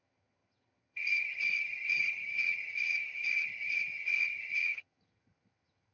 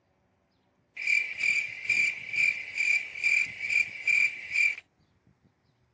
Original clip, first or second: second